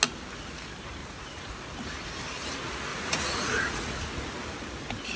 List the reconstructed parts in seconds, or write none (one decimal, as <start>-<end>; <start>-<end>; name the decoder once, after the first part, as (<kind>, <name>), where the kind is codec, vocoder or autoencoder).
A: 1.0-1.6 (vocoder, Vocos); 2.9-4.1